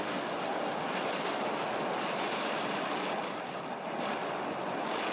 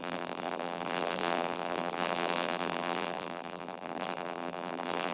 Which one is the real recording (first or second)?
first